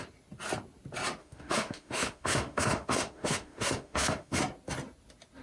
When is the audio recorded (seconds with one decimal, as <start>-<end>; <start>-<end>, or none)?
0.0-1.2; 4.4-5.4